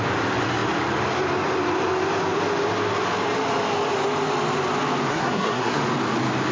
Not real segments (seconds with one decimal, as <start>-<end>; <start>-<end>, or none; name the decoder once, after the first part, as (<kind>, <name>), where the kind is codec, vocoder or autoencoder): 5.1-5.8 (codec, SNAC)